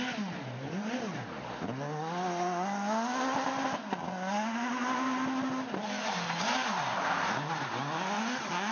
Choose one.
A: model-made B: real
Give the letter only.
B